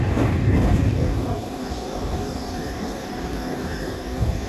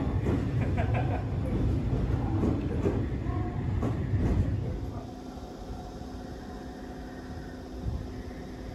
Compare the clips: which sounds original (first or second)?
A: second